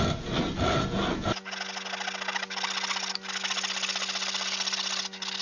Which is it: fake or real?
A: real